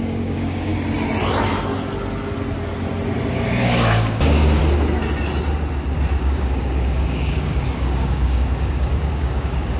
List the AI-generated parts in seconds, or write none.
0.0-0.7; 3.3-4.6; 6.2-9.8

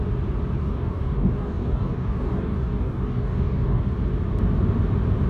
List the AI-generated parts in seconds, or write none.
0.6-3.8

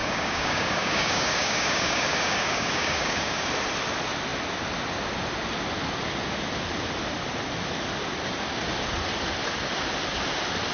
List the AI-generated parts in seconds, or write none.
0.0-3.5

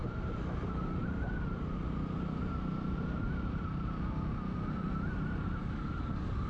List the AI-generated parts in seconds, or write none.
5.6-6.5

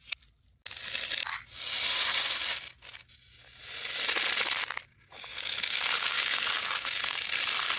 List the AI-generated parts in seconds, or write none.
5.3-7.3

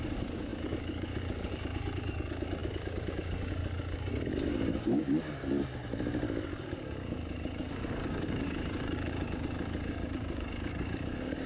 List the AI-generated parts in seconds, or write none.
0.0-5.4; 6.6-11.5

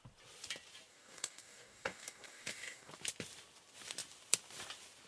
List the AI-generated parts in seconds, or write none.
0.9-2.9